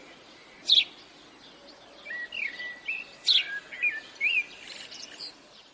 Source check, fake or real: real